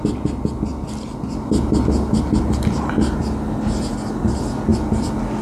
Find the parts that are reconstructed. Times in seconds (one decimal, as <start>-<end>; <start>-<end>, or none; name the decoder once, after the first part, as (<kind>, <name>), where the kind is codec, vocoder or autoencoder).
none